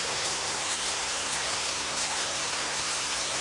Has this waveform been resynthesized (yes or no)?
yes